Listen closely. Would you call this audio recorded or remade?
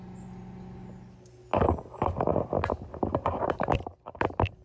recorded